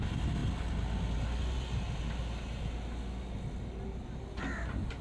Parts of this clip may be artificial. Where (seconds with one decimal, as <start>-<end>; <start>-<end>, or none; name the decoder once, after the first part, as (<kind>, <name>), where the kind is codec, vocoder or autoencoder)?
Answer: none